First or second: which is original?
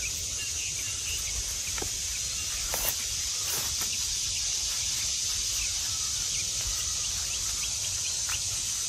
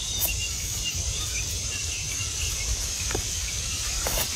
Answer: first